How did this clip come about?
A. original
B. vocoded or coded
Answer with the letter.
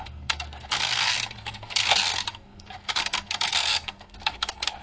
B